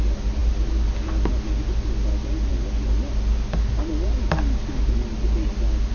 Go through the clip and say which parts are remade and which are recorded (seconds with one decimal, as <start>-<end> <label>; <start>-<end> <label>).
0.0-5.9 recorded